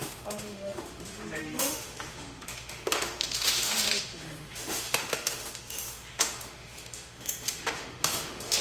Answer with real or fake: fake